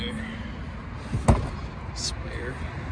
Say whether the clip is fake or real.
real